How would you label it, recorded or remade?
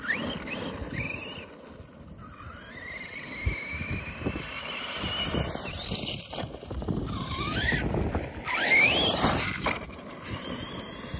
recorded